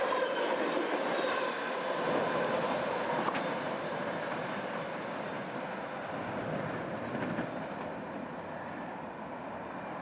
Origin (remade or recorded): recorded